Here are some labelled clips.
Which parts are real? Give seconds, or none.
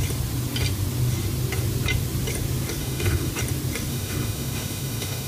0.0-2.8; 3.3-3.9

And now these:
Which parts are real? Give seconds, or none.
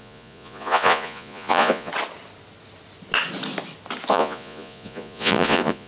1.9-4.1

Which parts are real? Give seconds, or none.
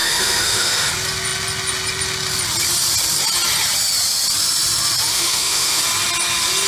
0.9-5.1; 5.8-6.7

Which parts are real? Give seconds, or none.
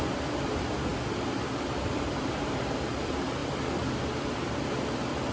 0.0-5.3